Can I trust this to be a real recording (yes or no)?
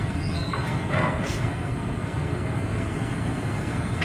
no